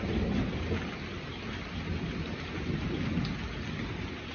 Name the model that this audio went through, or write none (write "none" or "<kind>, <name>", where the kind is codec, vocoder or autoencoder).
none